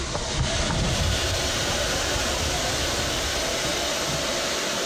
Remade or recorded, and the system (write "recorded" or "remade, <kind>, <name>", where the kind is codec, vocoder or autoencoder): recorded